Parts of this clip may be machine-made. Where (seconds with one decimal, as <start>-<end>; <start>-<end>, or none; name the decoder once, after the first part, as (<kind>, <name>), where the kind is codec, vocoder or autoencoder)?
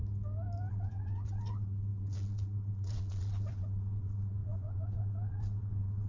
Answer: 0.7-6.1 (vocoder, WaveNeXt)